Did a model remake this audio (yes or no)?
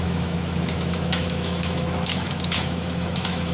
yes